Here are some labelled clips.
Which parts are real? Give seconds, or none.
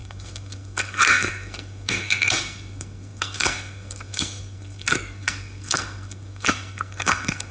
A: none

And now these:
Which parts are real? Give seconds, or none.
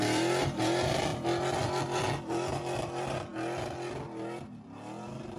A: 1.1-1.6; 3.3-5.0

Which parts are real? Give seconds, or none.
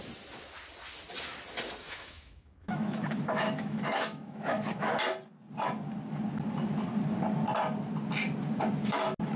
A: 0.0-1.8; 4.9-9.4